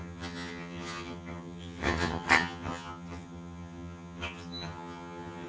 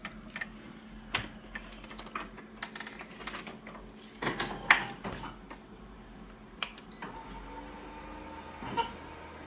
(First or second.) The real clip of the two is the second